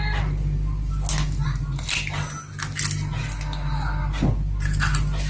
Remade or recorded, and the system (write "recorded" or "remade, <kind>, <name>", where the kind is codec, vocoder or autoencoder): recorded